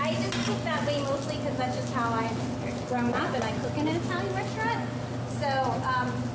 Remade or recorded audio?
recorded